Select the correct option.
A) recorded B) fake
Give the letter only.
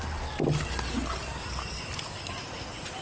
A